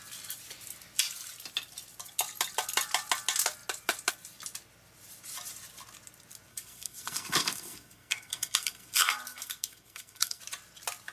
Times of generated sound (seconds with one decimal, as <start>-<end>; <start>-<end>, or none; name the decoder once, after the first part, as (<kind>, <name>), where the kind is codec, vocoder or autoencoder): 6.5-10.4 (codec, SNAC)